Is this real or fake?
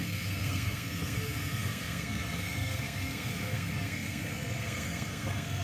fake